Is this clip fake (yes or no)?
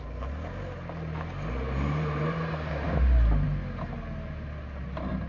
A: no